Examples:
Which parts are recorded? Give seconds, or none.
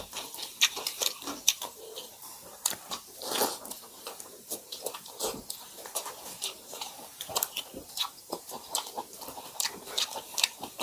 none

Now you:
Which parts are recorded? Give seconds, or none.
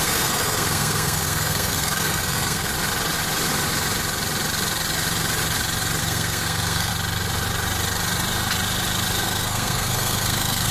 2.7-6.0; 6.9-9.2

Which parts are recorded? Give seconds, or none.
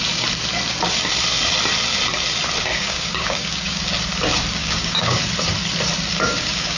0.0-2.7; 3.8-4.6; 5.2-6.1